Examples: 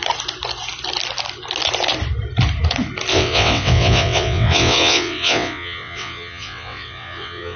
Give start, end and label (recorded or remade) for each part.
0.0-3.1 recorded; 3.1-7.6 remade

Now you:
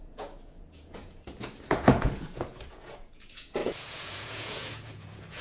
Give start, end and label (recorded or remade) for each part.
0.0-5.4 remade

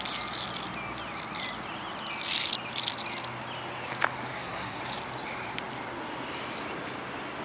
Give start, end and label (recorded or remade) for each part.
0.0-4.3 recorded; 4.3-4.8 remade; 4.8-7.4 recorded

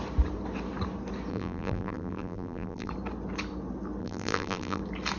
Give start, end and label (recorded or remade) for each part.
0.0-1.3 recorded; 1.3-2.9 remade; 2.9-4.0 recorded; 4.0-4.8 remade; 4.8-5.2 recorded

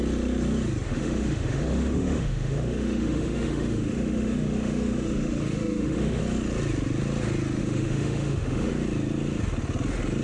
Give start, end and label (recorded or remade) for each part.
0.0-0.9 recorded; 0.9-6.2 remade; 6.2-7.6 recorded; 7.6-8.7 remade; 8.7-10.2 recorded

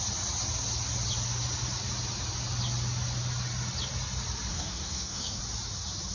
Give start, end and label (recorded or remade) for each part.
0.0-4.5 recorded; 4.5-5.4 remade; 5.4-6.1 recorded

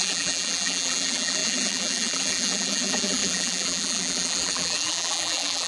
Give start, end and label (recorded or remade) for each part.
0.0-5.7 remade

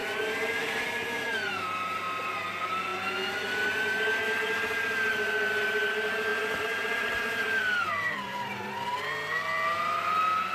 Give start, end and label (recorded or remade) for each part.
0.0-6.3 recorded; 6.3-9.1 remade; 9.1-10.5 recorded